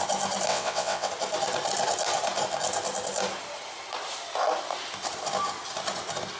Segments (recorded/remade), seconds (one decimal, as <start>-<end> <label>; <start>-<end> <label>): 0.0-0.5 recorded; 0.5-1.1 remade; 1.1-6.4 recorded